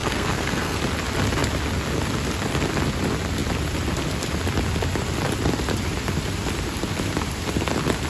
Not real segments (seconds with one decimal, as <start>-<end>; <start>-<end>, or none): 0.0-0.8